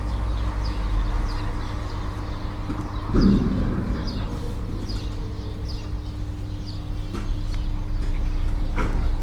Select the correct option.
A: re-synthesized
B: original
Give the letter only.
B